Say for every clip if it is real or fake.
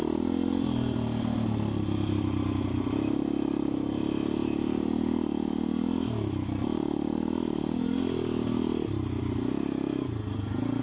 real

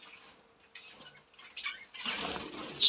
real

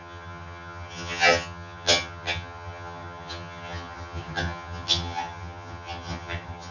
fake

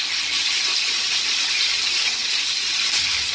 real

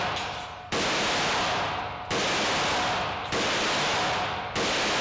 real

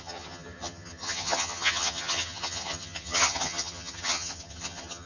fake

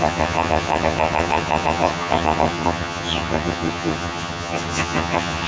fake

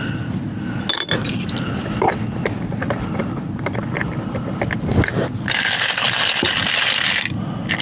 real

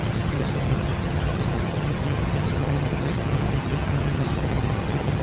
fake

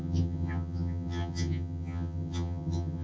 fake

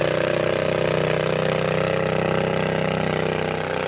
real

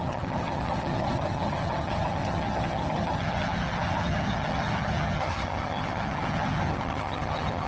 fake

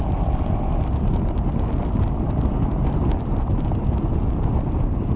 real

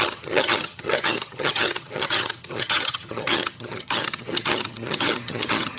fake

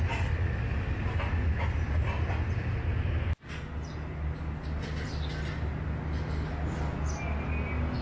real